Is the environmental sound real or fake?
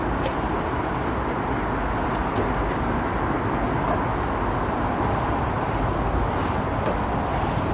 real